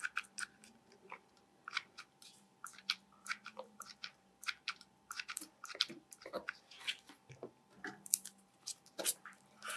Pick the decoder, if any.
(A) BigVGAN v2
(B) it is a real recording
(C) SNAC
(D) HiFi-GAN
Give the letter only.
A